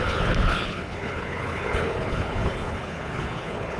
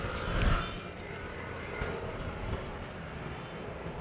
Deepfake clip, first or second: first